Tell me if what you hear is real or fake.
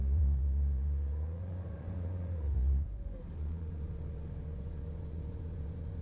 fake